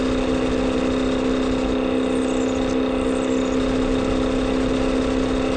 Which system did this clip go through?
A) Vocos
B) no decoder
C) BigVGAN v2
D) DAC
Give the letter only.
B